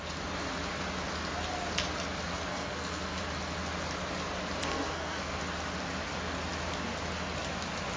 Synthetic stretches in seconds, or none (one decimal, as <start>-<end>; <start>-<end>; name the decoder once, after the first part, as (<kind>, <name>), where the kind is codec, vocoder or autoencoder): 2.5-3.2 (codec, SNAC); 4.6-5.4